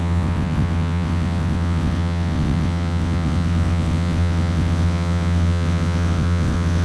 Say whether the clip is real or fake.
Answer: fake